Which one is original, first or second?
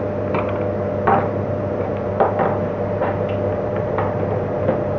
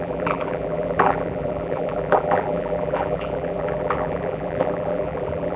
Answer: first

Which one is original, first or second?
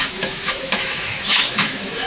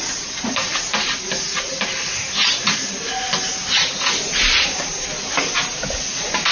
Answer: second